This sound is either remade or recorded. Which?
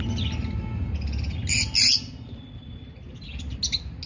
recorded